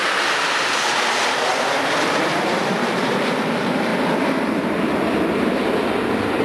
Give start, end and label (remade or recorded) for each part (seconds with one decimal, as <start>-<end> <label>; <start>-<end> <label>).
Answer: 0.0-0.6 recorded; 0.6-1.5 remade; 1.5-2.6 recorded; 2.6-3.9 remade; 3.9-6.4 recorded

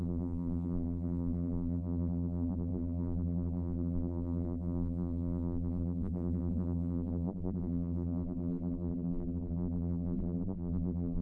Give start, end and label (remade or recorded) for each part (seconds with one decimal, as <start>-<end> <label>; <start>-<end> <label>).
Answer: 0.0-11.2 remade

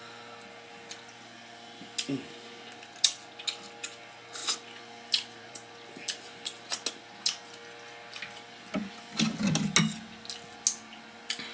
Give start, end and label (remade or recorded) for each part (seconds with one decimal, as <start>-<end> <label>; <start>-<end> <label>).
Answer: 0.0-4.4 recorded; 4.4-5.7 remade; 5.7-11.5 recorded